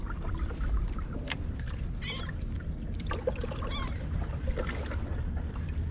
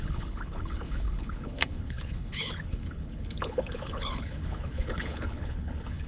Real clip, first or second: first